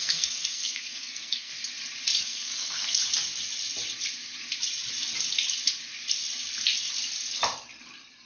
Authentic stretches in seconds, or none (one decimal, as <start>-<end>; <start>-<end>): 1.5-2.2; 3.0-8.3